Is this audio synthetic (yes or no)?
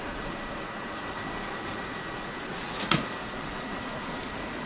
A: yes